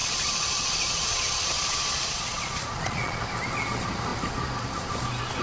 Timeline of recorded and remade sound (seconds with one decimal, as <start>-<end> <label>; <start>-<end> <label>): 0.0-3.2 remade; 3.2-5.4 recorded